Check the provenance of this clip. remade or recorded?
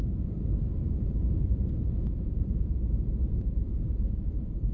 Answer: remade